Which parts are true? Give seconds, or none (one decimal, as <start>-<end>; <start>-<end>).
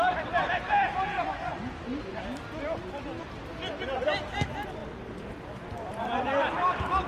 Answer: 0.0-7.1